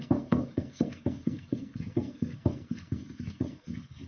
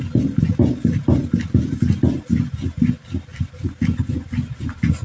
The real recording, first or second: second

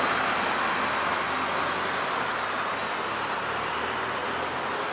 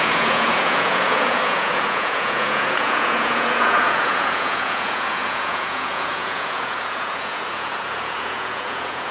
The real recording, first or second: first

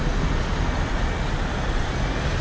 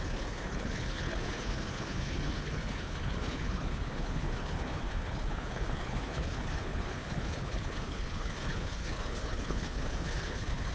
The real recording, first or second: first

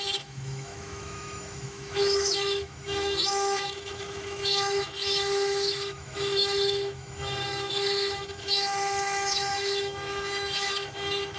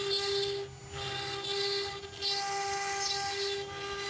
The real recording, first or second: second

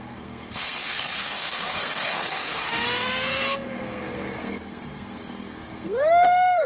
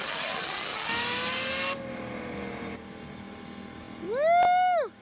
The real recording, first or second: second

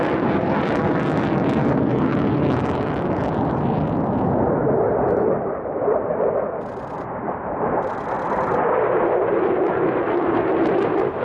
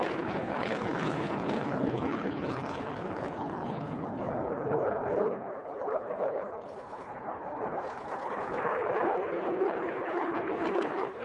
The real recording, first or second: first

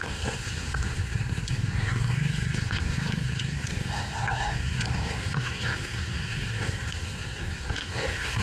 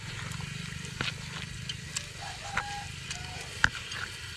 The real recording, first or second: second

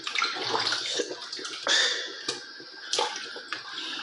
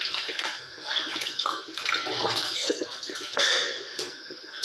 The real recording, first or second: first